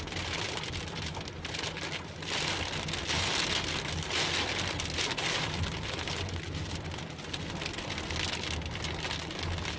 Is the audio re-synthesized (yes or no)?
no